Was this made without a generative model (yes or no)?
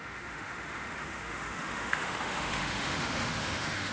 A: no